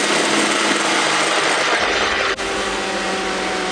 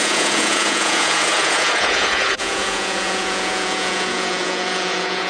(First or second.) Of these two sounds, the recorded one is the first